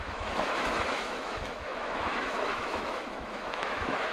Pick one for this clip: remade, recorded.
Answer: remade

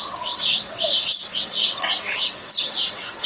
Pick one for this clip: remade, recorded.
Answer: remade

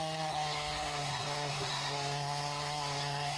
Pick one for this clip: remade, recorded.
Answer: remade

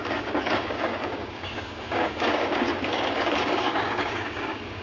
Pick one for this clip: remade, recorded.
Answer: remade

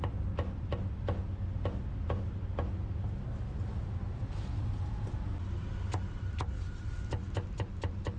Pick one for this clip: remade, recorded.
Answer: recorded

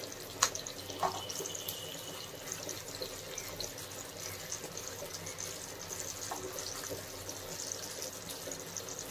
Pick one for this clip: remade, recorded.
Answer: recorded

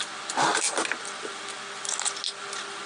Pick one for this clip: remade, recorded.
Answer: recorded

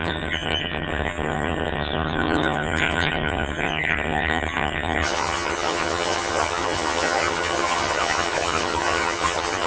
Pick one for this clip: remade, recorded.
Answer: remade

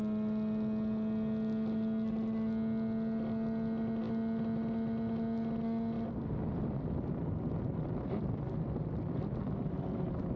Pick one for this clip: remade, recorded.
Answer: recorded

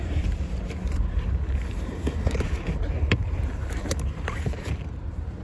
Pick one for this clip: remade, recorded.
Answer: remade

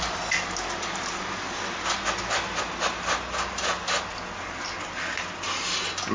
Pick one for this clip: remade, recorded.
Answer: recorded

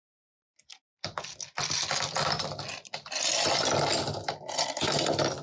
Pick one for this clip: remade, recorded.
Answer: recorded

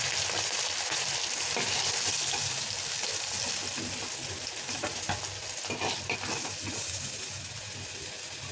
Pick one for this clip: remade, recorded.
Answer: recorded